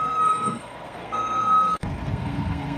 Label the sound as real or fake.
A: fake